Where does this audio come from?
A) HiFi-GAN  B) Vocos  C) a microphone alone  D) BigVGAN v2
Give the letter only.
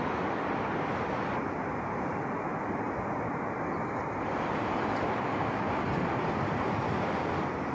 C